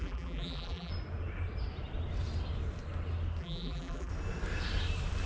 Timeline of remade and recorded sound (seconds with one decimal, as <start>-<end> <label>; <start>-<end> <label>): 0.0-0.9 remade; 0.9-3.4 recorded; 3.4-4.1 remade; 4.1-5.3 recorded